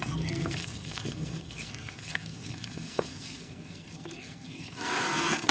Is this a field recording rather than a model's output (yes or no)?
no